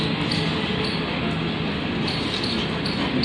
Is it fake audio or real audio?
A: real